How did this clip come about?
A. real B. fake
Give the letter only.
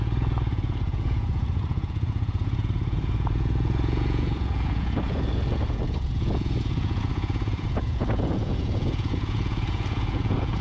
B